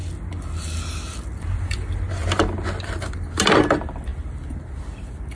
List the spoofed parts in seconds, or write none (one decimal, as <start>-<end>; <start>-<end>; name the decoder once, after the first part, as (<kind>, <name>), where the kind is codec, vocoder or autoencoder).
none